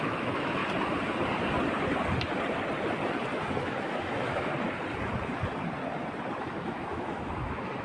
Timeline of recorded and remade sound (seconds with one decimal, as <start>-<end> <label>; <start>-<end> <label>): 0.0-0.6 remade; 0.6-3.4 recorded; 3.4-4.5 remade; 4.5-6.4 recorded; 6.4-7.8 remade